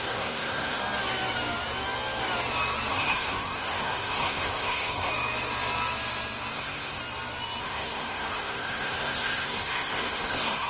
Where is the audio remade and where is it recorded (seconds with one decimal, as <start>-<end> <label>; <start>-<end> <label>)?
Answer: 0.0-0.8 remade; 0.8-2.9 recorded; 2.9-5.1 remade; 5.1-6.5 recorded; 6.5-7.0 remade; 7.0-7.6 recorded; 7.6-10.7 remade